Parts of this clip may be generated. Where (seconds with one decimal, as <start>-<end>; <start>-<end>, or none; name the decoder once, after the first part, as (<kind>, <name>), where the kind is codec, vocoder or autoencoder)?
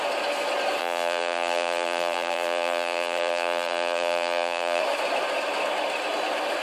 0.8-4.8 (vocoder, BigVGAN v2)